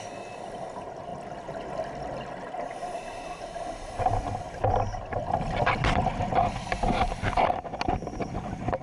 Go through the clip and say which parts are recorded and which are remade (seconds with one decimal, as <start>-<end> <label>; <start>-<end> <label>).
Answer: 0.0-8.8 recorded